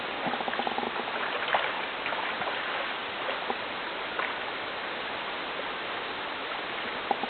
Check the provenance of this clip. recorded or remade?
recorded